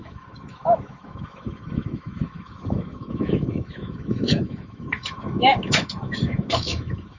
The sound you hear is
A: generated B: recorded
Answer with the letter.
A